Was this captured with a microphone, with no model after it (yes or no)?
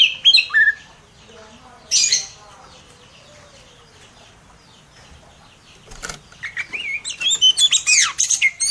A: yes